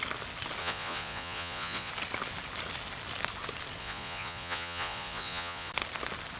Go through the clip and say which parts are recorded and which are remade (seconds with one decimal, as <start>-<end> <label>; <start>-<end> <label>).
0.0-0.6 recorded; 0.6-1.9 remade; 1.9-3.8 recorded; 3.8-5.7 remade; 5.7-6.4 recorded